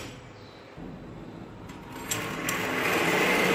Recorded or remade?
recorded